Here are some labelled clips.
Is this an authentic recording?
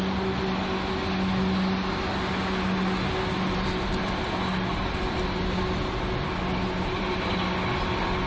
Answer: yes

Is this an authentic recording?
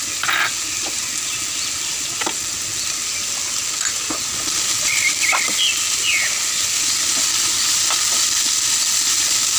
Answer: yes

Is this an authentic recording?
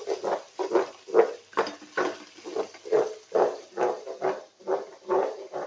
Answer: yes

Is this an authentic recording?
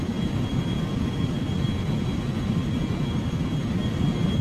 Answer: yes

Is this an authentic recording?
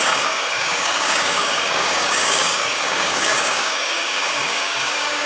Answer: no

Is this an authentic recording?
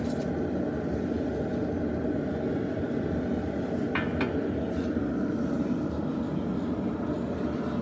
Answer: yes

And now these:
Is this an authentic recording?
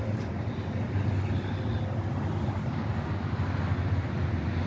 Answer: yes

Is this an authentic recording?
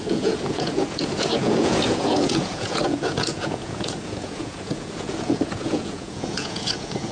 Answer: no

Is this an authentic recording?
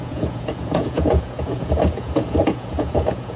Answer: no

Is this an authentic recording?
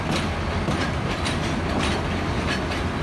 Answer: yes